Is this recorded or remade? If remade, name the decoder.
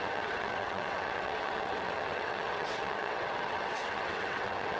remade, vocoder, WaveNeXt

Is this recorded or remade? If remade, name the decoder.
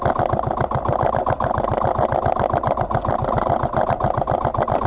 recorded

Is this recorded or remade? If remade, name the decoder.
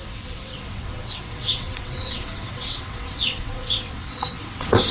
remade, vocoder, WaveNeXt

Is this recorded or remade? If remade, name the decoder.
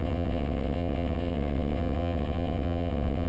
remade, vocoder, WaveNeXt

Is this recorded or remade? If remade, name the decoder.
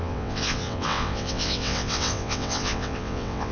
remade, vocoder, WaveNeXt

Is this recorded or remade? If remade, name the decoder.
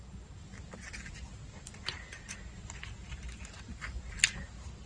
recorded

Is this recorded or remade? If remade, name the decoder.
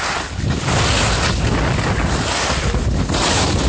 recorded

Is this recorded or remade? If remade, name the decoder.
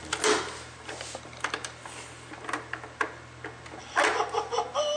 recorded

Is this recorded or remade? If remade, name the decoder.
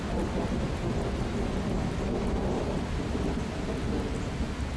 recorded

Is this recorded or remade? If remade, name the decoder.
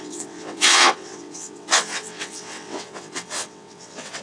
remade, vocoder, WaveNeXt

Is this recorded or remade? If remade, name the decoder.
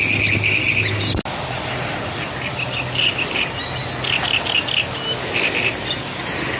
recorded